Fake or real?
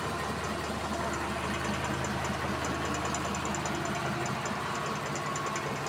real